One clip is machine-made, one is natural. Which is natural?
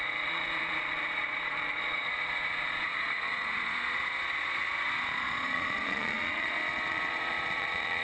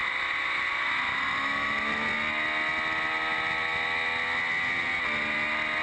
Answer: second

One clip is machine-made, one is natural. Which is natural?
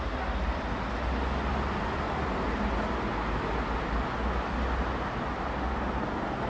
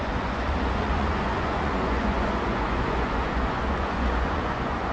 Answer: first